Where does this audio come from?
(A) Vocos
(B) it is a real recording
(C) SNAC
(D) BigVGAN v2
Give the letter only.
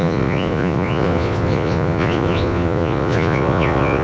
A